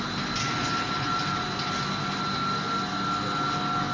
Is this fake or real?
real